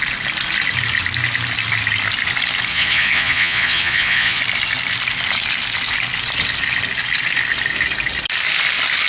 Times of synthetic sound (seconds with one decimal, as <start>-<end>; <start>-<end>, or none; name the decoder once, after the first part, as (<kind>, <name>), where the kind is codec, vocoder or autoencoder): 2.7-4.4 (vocoder, Vocos)